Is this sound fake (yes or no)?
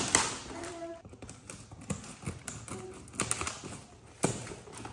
no